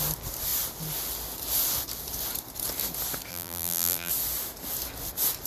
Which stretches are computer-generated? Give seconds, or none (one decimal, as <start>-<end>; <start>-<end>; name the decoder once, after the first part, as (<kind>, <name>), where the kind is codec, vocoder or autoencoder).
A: 3.3-4.1 (vocoder, BigVGAN v2)